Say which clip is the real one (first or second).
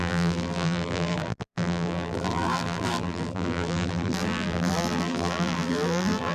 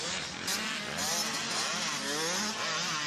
second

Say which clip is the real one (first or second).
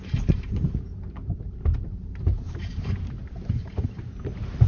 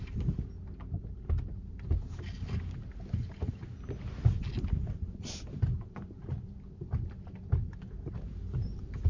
second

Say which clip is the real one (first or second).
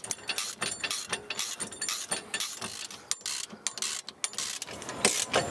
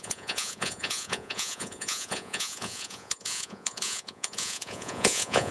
first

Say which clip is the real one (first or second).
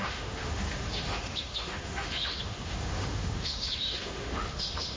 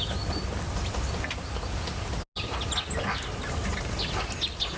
second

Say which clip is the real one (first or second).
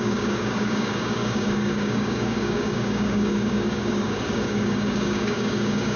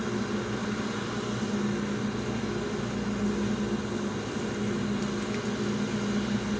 second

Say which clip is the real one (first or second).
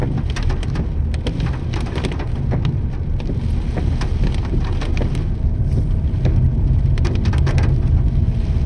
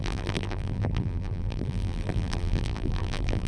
first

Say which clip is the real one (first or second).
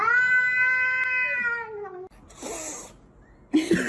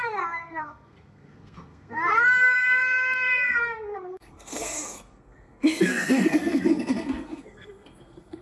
first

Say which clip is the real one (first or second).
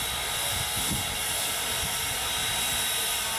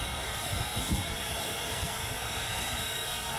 first